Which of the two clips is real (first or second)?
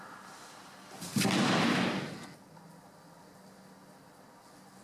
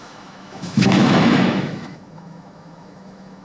first